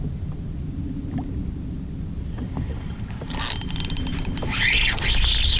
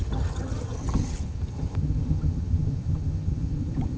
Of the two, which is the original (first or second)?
first